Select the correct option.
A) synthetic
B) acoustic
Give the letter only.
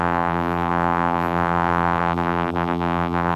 A